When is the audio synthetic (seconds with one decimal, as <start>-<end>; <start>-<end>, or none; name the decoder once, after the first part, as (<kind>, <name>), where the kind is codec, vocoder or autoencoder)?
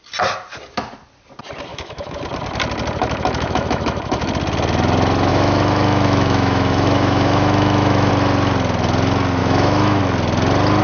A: 1.7-2.2 (autoencoder, DAC-VAE); 3.0-4.3; 5.3-8.1; 9.4-10.0